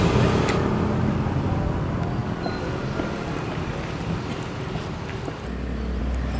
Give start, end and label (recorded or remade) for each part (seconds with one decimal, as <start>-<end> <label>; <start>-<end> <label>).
0.0-6.4 recorded